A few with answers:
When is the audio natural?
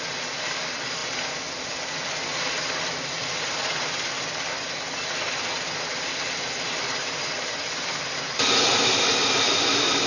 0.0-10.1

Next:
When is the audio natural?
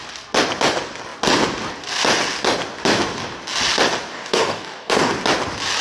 0.0-4.1; 5.1-5.8